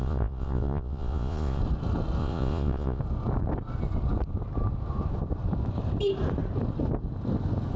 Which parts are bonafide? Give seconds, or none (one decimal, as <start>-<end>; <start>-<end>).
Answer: 1.6-2.2; 3.0-7.8